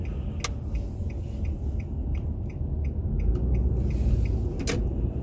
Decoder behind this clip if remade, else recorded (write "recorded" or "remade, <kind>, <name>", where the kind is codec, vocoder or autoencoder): recorded